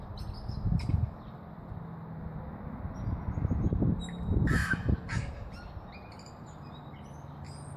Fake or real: real